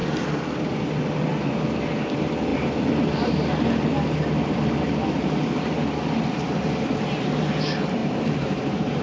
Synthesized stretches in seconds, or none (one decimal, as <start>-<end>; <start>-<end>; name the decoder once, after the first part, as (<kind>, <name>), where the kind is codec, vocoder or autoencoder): 8.0-9.0 (vocoder, BigVGAN v2)